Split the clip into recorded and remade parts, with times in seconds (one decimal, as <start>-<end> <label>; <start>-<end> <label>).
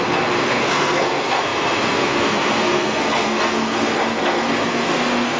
0.0-5.4 remade